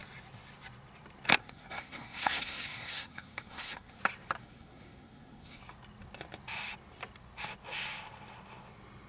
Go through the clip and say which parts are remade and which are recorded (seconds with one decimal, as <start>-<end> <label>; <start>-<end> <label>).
0.0-1.4 recorded; 1.4-4.0 remade; 4.0-4.4 recorded; 4.4-5.6 remade; 5.6-9.1 recorded